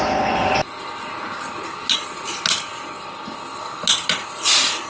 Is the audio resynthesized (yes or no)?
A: no